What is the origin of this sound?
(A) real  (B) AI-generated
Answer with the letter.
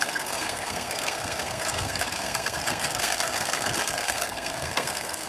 B